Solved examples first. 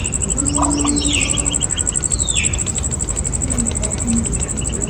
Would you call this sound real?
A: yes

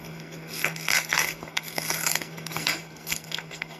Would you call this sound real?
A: no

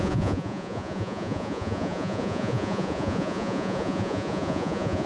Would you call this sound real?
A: no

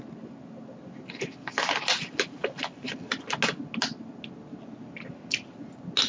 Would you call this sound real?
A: yes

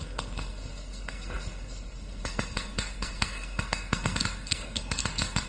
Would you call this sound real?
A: no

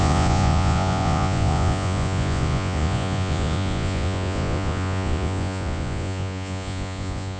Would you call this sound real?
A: no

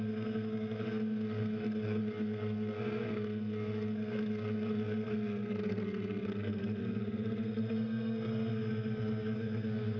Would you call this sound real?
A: no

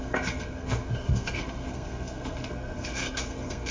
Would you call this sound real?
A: no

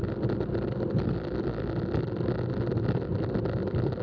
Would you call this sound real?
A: yes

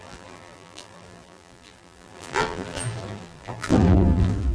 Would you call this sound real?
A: no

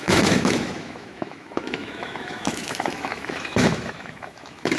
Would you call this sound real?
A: no